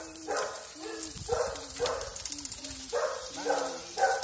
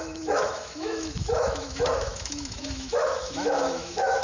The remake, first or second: second